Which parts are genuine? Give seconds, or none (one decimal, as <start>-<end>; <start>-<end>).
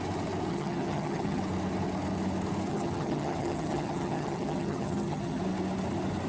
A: 0.0-0.5; 1.4-2.7; 5.4-6.3